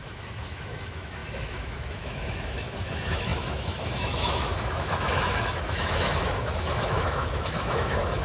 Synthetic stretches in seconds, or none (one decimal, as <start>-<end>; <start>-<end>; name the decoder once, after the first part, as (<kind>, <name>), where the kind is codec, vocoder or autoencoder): 0.0-8.2 (autoencoder, DAC-VAE)